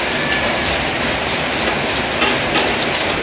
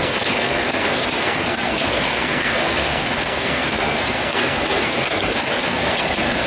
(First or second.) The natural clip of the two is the first